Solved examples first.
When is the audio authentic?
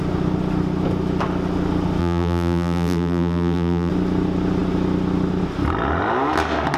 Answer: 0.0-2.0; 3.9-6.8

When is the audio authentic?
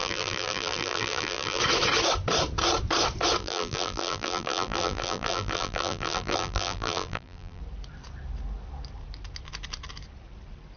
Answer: 1.6-3.4; 7.6-10.8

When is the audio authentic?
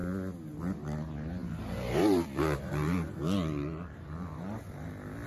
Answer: 0.0-1.4; 4.6-5.3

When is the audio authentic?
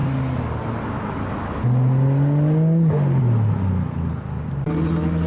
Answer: 0.0-5.3